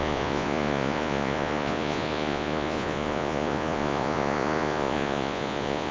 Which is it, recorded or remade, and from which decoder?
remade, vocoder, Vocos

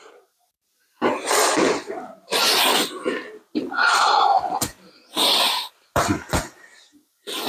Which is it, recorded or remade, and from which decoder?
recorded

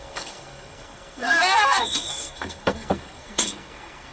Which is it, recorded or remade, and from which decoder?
remade, codec, SNAC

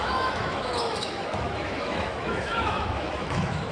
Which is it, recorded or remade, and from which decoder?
remade, autoencoder, DAC-VAE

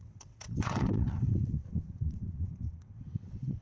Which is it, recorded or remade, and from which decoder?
remade, vocoder, WaveNeXt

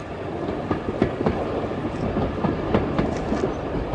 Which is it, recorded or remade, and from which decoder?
recorded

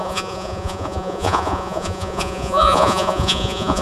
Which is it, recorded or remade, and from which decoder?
remade, vocoder, Vocos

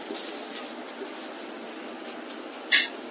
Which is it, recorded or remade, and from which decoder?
recorded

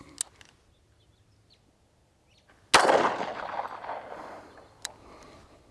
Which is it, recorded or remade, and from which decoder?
recorded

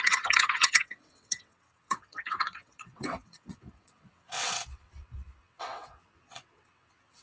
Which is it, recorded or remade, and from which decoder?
remade, vocoder, WaveNeXt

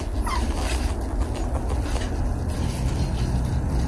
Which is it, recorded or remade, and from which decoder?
recorded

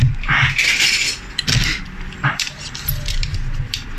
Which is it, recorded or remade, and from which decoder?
remade, vocoder, BigVGAN v2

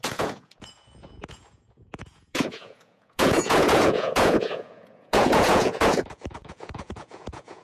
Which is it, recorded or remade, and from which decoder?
remade, vocoder, Vocos